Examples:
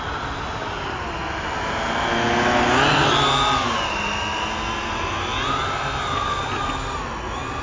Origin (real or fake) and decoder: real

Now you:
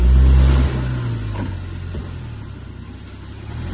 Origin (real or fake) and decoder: real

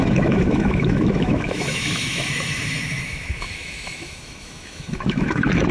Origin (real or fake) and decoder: fake, autoencoder, DAC-VAE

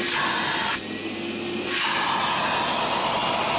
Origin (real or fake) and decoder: real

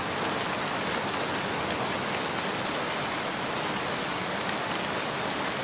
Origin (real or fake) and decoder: real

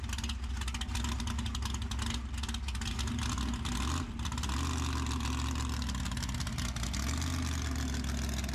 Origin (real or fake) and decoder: real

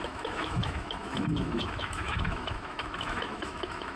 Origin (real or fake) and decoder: fake, autoencoder, DAC-VAE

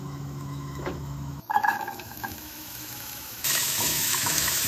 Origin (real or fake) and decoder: fake, autoencoder, DAC-VAE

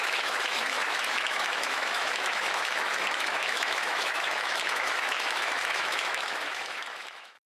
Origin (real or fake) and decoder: fake, autoencoder, DAC-VAE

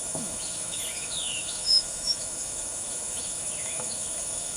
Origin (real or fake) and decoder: fake, autoencoder, DAC-VAE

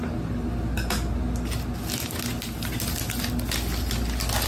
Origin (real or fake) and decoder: real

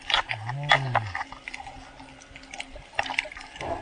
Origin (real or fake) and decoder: real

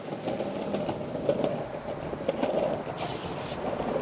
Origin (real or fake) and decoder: real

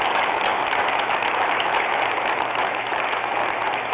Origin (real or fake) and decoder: fake, autoencoder, DAC-VAE